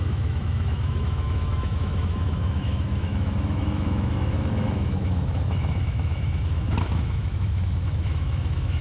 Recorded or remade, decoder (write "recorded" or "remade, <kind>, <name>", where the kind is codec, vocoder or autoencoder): remade, autoencoder, DAC-VAE